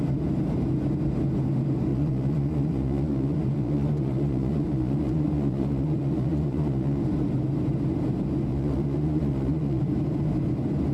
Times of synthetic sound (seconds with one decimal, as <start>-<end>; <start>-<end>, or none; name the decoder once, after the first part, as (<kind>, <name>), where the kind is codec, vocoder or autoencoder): 1.9-7.0 (vocoder, Vocos); 8.5-9.8